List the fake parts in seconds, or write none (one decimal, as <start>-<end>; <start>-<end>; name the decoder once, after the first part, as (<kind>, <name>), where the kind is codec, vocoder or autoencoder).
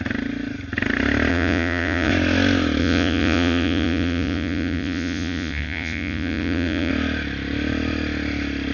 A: 1.3-2.1 (vocoder, Vocos); 2.8-6.9